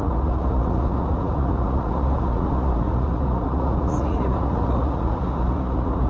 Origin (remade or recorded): remade